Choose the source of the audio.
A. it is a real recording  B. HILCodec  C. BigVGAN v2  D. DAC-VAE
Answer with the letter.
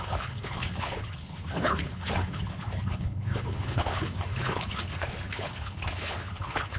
B